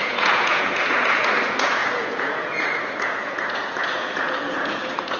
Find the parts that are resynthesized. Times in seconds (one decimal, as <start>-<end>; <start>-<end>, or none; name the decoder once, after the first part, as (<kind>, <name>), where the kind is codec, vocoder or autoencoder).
0.0-5.2 (vocoder, Vocos)